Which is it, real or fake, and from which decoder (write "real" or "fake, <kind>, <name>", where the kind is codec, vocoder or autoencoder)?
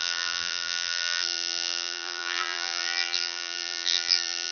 fake, vocoder, BigVGAN v2